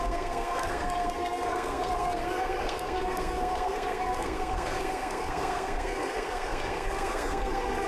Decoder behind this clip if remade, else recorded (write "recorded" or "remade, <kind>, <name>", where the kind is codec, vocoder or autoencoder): remade, codec, SNAC